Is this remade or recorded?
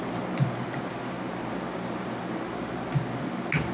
recorded